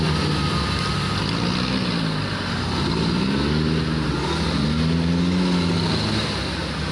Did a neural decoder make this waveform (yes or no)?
no